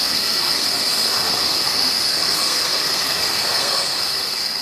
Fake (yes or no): yes